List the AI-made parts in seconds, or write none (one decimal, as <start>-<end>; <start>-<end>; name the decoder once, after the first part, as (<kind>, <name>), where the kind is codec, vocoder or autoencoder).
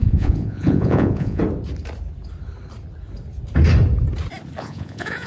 0.0-1.4 (vocoder, Vocos); 4.6-5.3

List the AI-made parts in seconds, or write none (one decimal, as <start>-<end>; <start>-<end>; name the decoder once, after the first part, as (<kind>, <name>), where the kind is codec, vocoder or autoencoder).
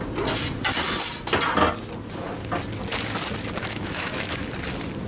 3.6-4.5 (autoencoder, DAC-VAE)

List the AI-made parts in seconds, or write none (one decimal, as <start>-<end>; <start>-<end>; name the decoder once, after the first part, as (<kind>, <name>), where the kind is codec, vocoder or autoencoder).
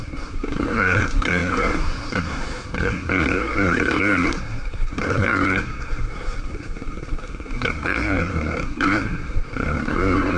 0.0-10.4 (codec, SNAC)